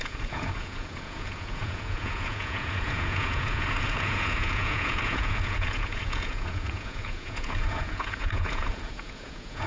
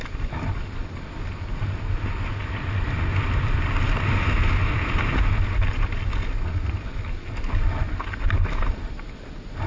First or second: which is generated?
first